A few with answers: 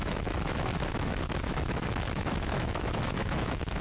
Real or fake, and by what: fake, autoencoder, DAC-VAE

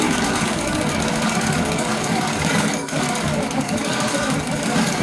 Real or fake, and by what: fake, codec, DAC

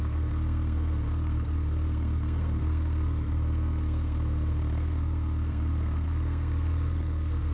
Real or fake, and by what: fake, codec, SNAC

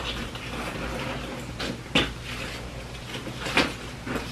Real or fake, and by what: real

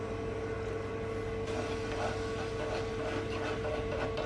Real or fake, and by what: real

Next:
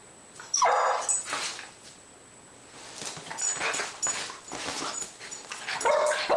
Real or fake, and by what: real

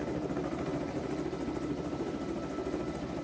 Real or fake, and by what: real